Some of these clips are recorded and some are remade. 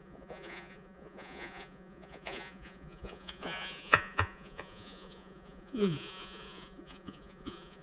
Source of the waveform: remade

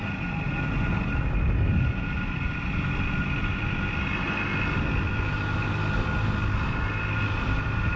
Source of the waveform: recorded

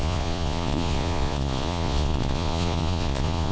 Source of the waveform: remade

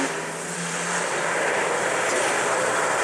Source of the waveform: recorded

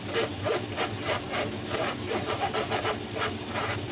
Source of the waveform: recorded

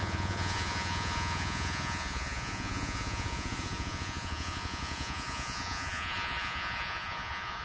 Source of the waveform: remade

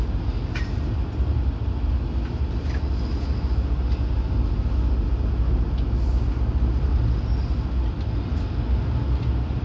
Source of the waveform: recorded